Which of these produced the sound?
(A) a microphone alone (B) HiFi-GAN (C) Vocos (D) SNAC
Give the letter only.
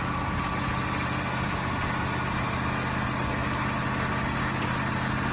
A